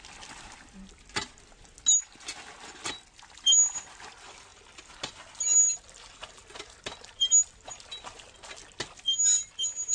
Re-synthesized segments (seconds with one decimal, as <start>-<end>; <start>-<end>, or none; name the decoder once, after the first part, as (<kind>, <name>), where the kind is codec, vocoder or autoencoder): none